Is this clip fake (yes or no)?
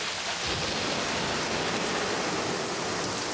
no